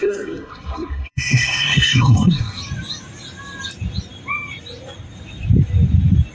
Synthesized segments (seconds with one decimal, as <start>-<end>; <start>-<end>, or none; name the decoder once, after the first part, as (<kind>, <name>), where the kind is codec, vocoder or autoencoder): 0.0-2.6 (codec, SNAC)

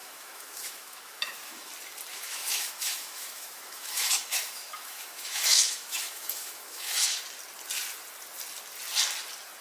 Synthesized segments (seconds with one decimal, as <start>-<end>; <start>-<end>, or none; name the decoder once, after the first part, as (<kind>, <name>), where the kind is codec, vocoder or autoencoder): 0.0-1.7 (autoencoder, DAC-VAE); 2.1-7.2

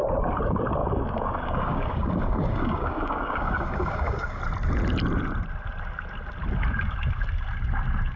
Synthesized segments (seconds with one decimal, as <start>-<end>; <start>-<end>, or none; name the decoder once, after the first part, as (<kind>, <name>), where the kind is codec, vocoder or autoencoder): 0.8-4.4 (codec, DAC)

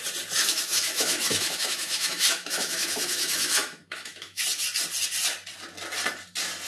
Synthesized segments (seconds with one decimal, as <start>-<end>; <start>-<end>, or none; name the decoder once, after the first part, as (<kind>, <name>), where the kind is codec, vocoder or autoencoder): 0.4-4.4 (autoencoder, DAC-VAE)

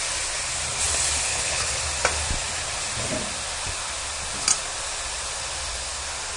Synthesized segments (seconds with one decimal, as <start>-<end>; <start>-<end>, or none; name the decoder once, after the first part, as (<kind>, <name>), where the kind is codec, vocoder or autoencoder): 1.3-1.8 (codec, HILCodec)

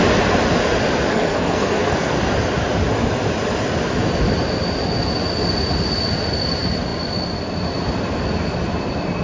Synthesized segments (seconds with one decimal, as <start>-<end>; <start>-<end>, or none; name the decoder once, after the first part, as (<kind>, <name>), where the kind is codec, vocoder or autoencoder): 1.1-2.2 (codec, SNAC)